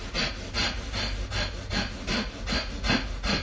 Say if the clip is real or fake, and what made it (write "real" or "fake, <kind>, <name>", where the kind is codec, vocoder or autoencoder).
real